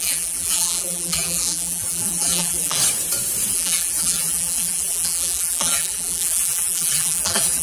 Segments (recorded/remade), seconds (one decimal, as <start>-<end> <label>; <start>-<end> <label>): 0.0-2.8 remade; 2.8-3.5 recorded; 3.5-7.6 remade